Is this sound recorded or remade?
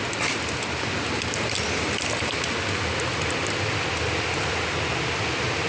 recorded